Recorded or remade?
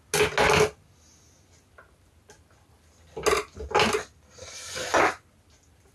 recorded